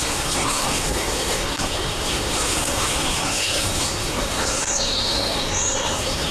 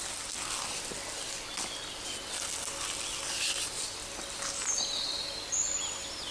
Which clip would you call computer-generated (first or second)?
first